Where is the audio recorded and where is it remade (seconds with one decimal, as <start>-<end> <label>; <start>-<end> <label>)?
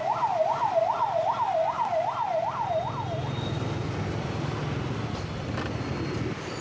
0.0-6.6 recorded